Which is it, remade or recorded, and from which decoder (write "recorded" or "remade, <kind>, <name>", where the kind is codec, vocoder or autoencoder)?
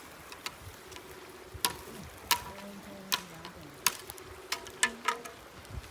recorded